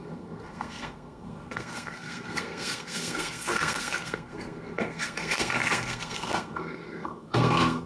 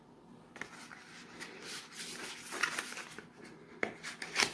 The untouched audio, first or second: second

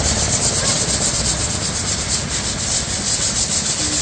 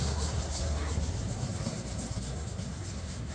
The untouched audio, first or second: first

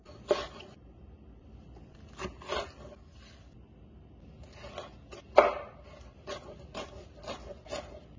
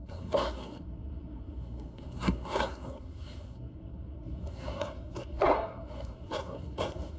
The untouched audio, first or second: first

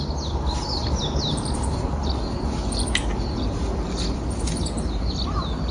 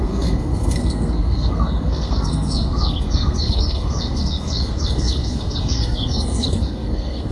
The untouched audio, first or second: first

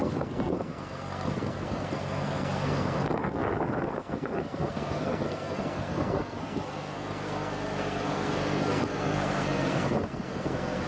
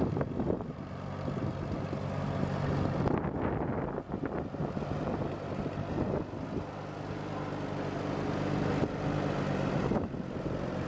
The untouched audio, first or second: second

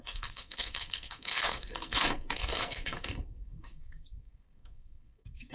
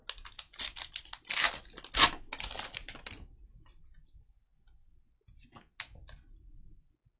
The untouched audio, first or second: second